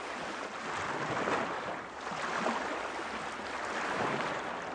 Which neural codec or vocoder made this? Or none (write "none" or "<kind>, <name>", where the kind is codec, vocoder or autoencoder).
none